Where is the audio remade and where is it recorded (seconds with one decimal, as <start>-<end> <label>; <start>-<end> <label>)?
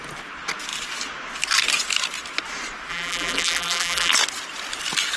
0.0-2.9 recorded; 2.9-4.1 remade; 4.1-5.2 recorded